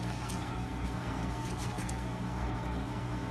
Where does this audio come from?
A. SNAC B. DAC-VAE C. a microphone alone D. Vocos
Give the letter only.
A